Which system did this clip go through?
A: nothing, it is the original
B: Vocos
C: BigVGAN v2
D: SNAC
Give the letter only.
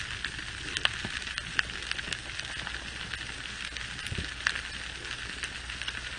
A